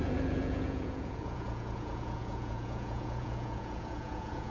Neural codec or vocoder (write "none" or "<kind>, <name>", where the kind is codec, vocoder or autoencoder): vocoder, Vocos